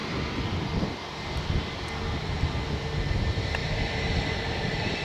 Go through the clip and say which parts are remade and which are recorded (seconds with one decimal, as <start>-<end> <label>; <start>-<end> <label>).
0.0-3.6 recorded; 3.6-5.0 remade